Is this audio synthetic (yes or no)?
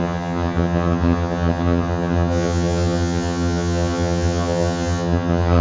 yes